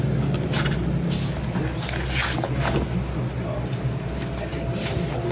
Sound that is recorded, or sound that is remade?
recorded